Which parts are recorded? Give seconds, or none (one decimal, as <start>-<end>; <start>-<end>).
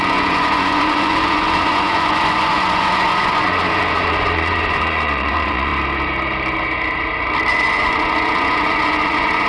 5.7-7.5